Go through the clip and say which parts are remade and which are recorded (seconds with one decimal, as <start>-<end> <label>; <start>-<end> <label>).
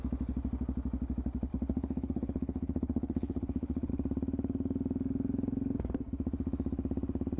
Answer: 0.0-1.5 recorded; 1.5-3.9 remade; 3.9-7.4 recorded